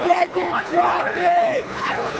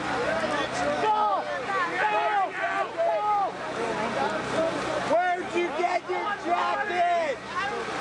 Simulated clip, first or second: first